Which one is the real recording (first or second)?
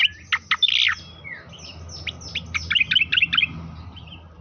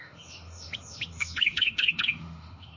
first